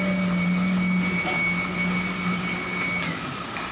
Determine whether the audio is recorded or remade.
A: recorded